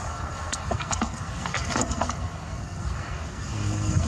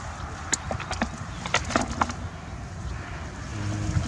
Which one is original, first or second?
second